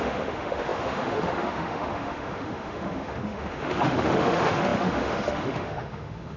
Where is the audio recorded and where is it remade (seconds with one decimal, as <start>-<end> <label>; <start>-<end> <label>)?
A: 0.0-6.4 remade